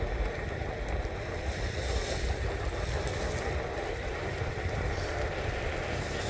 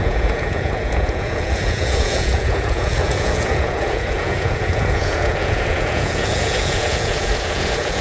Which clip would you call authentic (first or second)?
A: first